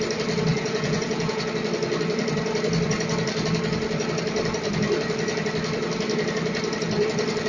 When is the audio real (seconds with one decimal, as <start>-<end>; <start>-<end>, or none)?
0.0-0.5; 1.5-7.5